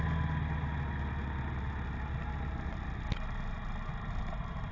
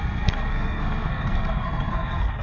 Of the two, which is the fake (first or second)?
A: second